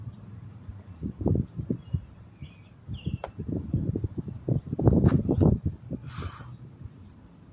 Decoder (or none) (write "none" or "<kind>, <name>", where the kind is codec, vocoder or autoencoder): vocoder, BigVGAN v2